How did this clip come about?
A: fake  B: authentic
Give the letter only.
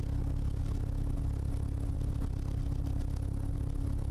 B